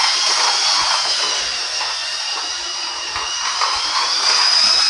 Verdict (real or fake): real